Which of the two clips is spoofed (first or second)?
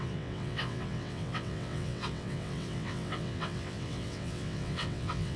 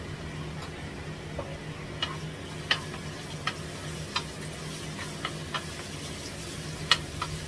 first